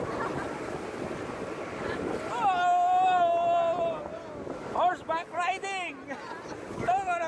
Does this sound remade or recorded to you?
recorded